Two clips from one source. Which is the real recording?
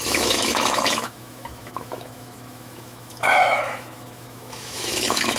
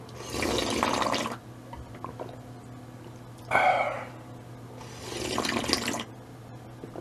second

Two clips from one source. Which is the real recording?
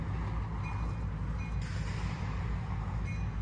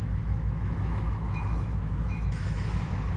first